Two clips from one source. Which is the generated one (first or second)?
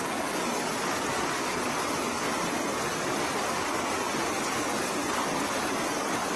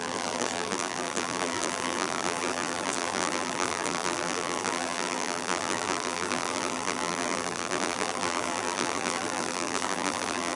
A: second